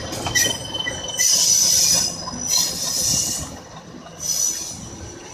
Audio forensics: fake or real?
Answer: real